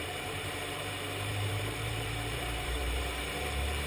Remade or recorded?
remade